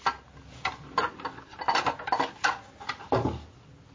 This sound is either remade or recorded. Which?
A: recorded